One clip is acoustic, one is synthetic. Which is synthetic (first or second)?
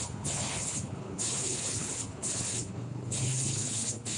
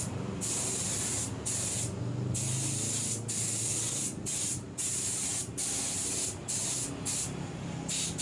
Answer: first